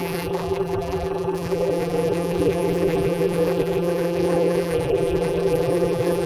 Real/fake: fake